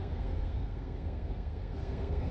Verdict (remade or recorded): remade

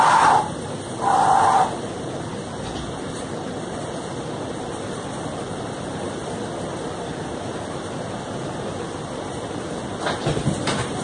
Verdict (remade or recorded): recorded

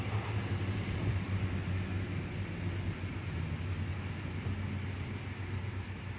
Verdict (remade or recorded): recorded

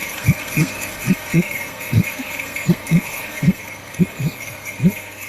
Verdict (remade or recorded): remade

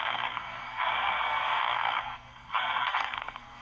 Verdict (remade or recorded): remade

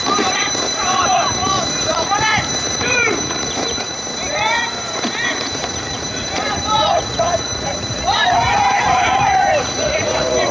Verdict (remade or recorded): remade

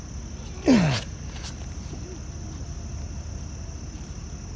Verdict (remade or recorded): recorded